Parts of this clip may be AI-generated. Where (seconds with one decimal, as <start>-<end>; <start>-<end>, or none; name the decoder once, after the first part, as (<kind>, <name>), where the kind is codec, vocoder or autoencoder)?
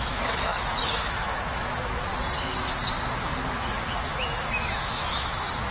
0.0-2.1 (autoencoder, DAC-VAE); 3.9-5.7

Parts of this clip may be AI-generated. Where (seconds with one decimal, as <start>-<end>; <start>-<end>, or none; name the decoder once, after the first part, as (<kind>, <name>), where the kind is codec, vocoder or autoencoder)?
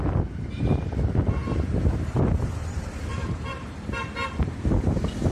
1.4-4.6 (vocoder, BigVGAN v2)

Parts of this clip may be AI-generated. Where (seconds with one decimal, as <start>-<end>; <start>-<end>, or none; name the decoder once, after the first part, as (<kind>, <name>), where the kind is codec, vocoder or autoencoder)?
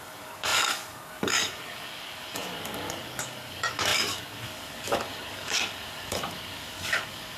0.0-7.4 (codec, DAC)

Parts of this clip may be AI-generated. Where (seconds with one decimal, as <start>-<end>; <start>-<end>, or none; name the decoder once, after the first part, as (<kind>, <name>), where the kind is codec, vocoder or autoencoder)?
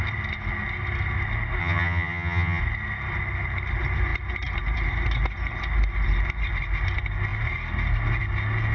1.6-2.6 (vocoder, HiFi-GAN)